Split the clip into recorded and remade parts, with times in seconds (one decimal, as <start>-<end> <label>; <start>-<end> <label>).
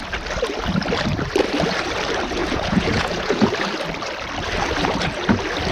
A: 0.0-2.4 recorded; 2.4-3.5 remade; 3.5-5.7 recorded